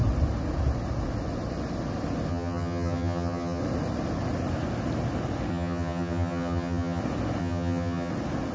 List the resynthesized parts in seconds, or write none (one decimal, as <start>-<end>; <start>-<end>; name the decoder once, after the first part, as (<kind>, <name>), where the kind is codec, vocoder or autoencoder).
2.3-3.6 (vocoder, HiFi-GAN); 5.5-7.0; 7.4-8.1